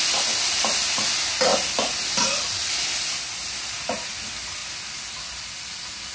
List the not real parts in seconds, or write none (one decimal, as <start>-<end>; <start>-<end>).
none